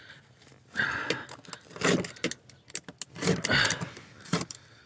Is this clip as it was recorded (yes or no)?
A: yes